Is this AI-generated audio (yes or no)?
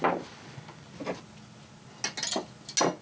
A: no